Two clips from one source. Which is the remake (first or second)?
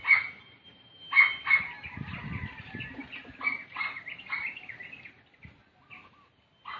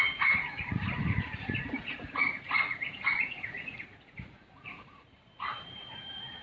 second